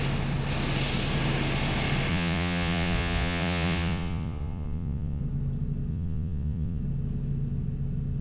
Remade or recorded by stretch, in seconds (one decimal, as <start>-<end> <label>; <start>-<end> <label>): 0.0-2.1 recorded; 2.1-5.2 remade; 5.2-5.9 recorded; 5.9-6.8 remade; 6.8-8.2 recorded